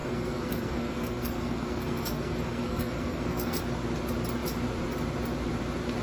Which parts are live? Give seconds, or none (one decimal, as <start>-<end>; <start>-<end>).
3.6-6.0